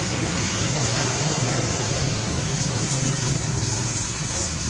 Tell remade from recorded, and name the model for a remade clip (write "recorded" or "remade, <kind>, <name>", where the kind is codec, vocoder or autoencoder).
remade, codec, SNAC